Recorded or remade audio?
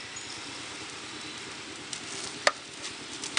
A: recorded